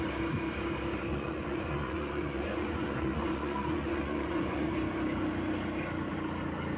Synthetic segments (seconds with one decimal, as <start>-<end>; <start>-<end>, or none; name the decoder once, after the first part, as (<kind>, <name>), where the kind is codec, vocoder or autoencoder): 1.1-4.7 (vocoder, Vocos)